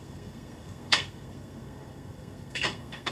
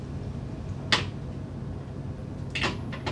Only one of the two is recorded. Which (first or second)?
second